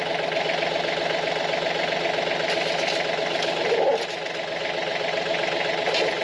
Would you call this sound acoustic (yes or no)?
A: yes